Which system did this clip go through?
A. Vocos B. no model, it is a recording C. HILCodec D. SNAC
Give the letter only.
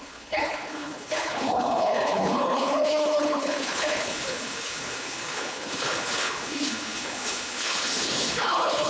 C